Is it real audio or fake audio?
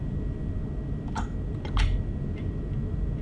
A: real